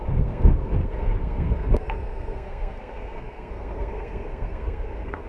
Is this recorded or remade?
remade